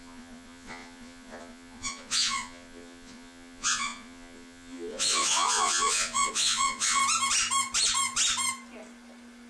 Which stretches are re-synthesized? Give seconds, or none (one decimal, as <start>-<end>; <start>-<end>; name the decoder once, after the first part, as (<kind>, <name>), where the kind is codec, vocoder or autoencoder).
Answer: 0.0-7.0 (vocoder, Vocos)